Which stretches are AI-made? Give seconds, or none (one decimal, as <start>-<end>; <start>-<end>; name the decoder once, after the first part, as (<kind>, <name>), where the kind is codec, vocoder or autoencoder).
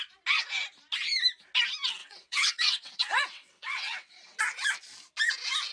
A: 2.0-4.4 (vocoder, WaveNeXt)